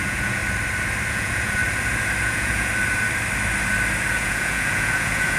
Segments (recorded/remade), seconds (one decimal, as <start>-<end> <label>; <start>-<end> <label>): 0.0-0.4 remade; 0.4-1.1 recorded; 1.1-1.6 remade; 1.6-2.2 recorded; 2.2-2.7 remade; 2.7-4.1 recorded; 4.1-5.4 remade